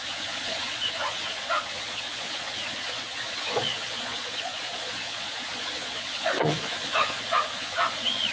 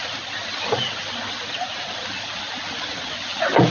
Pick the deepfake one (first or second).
first